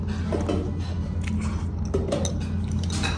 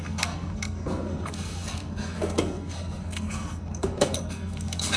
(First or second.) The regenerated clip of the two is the second